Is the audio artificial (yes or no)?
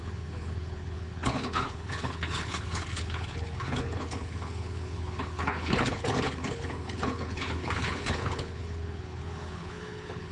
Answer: yes